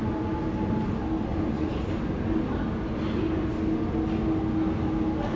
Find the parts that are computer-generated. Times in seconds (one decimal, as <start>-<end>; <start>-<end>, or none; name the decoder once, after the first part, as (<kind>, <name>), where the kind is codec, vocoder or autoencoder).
1.3-1.8 (vocoder, Vocos)